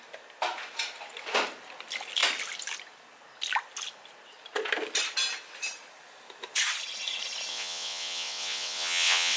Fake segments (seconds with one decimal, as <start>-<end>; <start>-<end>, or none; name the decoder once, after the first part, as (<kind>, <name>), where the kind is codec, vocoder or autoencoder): 7.5-9.4 (vocoder, WaveNeXt)